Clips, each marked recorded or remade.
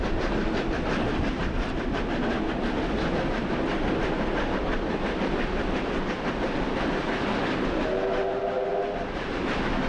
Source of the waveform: recorded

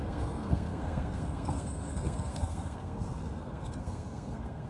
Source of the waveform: remade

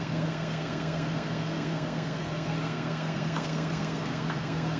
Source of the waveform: remade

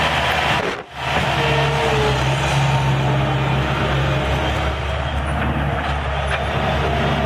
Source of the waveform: recorded